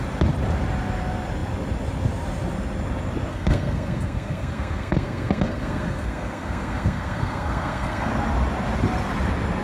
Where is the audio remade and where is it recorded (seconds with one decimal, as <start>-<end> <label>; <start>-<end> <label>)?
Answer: 0.0-3.3 recorded; 3.3-8.1 remade; 8.1-9.6 recorded